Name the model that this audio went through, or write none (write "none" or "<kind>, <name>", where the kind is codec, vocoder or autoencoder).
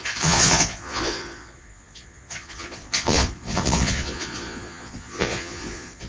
vocoder, Vocos